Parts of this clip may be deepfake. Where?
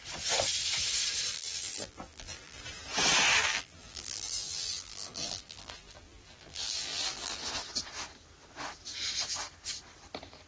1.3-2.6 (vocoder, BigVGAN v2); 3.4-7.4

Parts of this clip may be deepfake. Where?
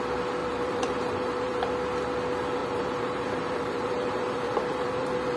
0.4-1.7 (vocoder, BigVGAN v2); 2.6-5.4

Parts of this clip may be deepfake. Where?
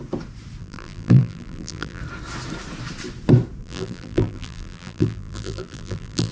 0.6-2.0 (vocoder, BigVGAN v2); 3.6-6.3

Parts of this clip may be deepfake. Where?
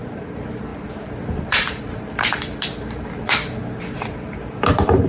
0.0-5.1 (vocoder, BigVGAN v2)